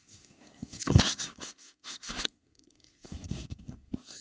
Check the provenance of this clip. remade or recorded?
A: remade